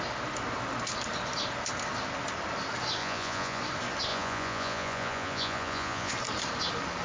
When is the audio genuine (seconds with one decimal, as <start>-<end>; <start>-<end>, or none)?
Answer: 0.0-3.0; 3.6-4.1; 6.1-7.0